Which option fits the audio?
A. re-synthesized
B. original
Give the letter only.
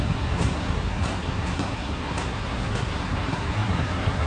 A